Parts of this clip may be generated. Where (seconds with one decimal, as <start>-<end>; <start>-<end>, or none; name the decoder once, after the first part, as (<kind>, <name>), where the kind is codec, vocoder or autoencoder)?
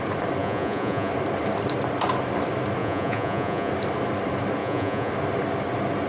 0.4-1.1 (vocoder, Vocos); 2.8-3.7; 4.6-5.1